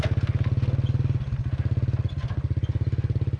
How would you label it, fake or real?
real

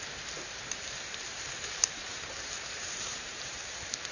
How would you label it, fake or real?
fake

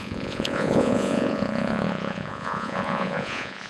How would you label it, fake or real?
fake